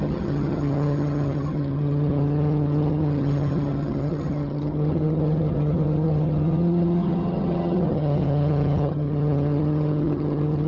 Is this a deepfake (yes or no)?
yes